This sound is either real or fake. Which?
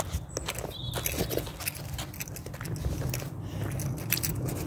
real